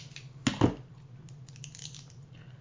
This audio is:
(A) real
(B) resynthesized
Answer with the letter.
A